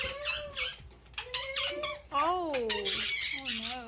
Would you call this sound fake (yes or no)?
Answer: no